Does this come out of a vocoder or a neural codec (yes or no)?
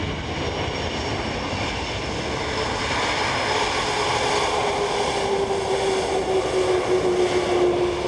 no